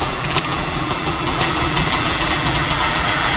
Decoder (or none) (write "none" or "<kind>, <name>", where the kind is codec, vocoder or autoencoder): vocoder, BigVGAN v2